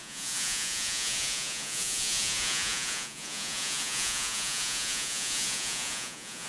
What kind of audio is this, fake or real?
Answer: fake